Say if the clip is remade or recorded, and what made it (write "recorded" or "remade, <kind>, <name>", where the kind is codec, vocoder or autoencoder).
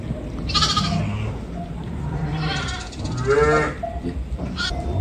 recorded